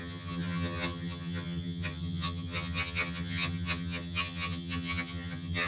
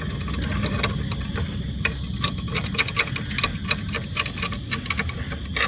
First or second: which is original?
second